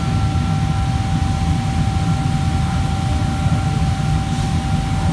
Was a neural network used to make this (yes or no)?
no